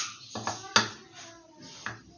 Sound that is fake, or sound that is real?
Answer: real